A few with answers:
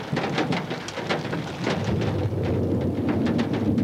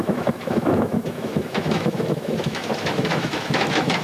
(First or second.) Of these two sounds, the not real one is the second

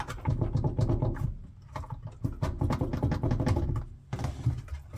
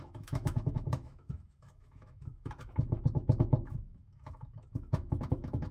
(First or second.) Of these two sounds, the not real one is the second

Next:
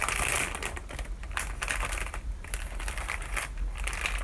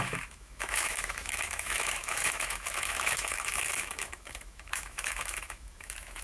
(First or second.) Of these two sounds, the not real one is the second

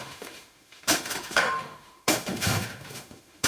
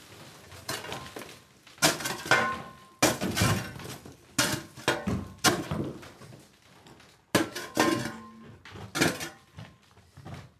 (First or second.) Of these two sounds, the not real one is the first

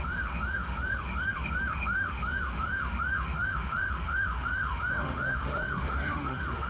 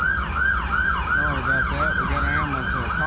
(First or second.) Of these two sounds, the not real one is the first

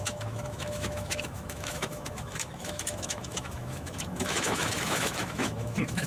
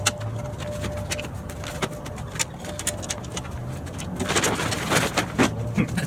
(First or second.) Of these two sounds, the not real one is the first